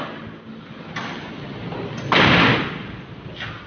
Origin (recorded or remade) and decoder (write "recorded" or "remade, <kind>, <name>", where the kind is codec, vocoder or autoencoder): recorded